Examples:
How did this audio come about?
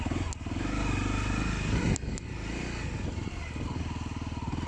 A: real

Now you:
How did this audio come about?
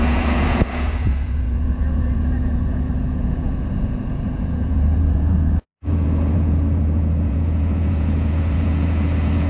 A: fake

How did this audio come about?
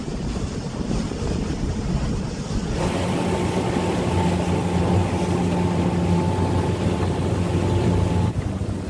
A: real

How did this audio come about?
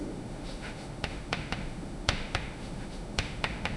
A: fake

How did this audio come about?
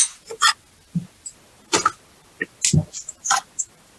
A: real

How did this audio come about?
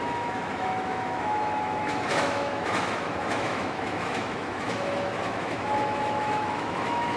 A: fake